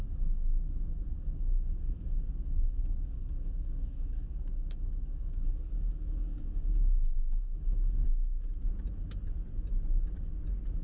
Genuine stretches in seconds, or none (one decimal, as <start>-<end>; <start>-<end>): 8.0-10.8